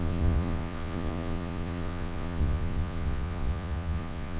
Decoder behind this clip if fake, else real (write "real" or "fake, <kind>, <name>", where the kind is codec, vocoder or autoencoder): fake, vocoder, Vocos